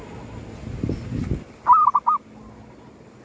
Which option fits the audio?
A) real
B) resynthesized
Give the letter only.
A